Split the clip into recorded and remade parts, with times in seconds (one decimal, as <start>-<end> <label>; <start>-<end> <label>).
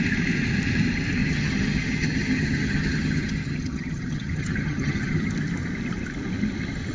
0.0-1.2 recorded; 1.2-5.3 remade; 5.3-6.9 recorded